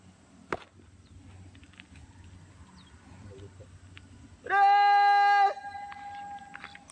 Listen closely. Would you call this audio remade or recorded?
recorded